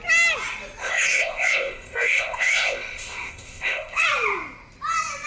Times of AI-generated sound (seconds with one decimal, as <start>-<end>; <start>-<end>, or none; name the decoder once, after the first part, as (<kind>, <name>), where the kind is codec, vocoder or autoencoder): 0.8-4.0 (codec, ZipCodec)